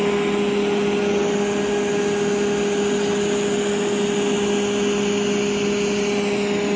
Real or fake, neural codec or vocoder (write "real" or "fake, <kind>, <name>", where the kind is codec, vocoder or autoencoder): real